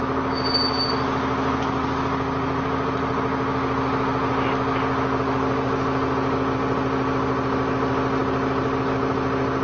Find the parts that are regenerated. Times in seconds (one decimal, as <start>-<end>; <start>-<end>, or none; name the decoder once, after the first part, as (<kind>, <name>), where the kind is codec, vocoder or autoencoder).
none